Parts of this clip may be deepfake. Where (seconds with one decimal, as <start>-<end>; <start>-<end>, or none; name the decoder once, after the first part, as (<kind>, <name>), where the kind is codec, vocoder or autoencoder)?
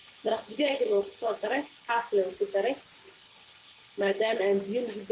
0.0-1.9 (codec, HILCodec); 3.1-4.4